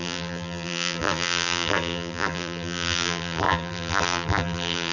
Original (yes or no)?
no